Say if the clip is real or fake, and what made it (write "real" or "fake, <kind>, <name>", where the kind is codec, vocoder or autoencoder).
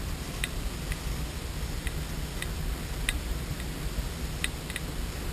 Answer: real